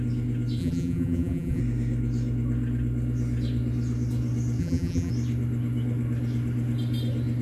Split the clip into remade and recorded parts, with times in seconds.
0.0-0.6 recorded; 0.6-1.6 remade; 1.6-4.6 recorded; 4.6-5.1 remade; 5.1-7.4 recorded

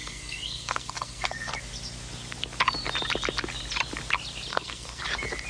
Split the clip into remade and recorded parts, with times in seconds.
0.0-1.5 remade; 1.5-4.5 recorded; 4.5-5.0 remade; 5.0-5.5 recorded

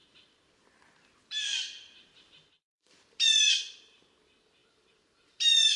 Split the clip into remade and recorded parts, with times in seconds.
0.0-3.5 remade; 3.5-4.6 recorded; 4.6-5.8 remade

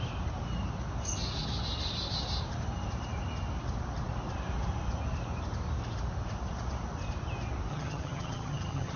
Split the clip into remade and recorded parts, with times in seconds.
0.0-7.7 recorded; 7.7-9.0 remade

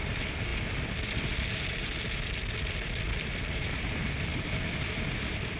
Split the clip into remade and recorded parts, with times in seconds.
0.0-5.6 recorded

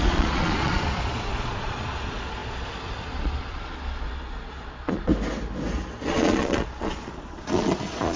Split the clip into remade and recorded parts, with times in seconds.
0.0-5.1 remade; 5.1-6.1 recorded; 6.1-8.2 remade

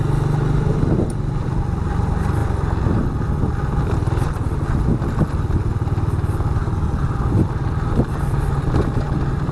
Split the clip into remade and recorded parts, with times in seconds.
0.0-9.5 recorded

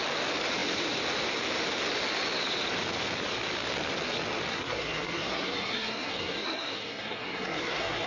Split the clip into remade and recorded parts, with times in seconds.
0.0-4.5 recorded; 4.5-8.1 remade